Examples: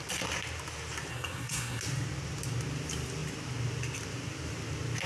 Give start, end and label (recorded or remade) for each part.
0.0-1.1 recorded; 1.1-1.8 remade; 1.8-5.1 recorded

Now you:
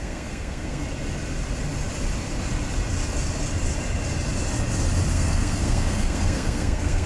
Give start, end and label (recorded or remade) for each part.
0.0-0.8 remade; 0.8-5.1 recorded; 5.1-7.1 remade